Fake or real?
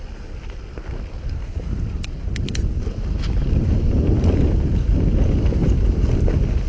real